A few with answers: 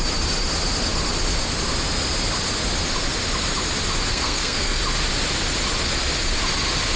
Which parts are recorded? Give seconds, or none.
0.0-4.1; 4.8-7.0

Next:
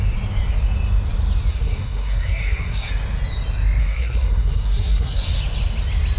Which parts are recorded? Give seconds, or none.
0.0-1.5; 2.9-3.8; 5.4-6.2

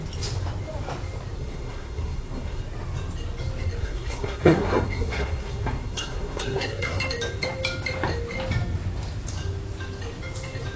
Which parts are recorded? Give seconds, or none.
0.0-1.4; 2.6-3.8; 7.0-10.8

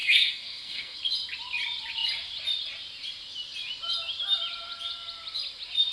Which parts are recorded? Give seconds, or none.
1.0-5.9

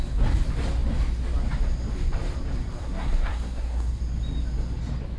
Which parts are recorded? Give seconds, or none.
0.0-2.8; 4.0-5.2

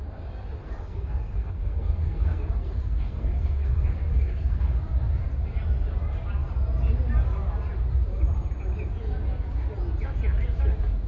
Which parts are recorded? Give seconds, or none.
0.0-0.6; 4.8-11.1